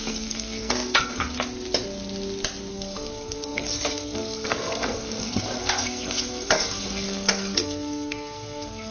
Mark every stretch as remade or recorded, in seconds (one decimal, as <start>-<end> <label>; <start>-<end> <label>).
0.0-1.2 remade; 1.2-2.7 recorded; 2.7-8.9 remade